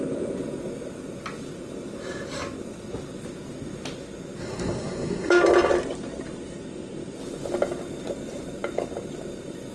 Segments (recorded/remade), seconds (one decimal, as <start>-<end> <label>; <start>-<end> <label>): 0.0-4.4 recorded; 4.4-5.3 remade; 5.3-9.7 recorded